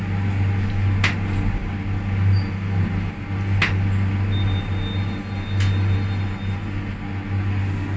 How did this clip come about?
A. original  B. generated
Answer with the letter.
A